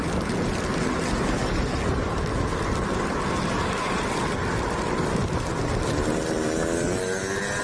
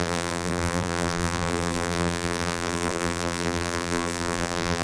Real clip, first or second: first